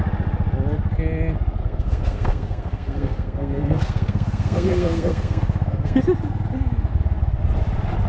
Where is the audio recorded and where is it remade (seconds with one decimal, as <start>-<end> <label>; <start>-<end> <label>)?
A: 0.0-1.6 recorded; 1.6-6.0 remade; 6.0-8.1 recorded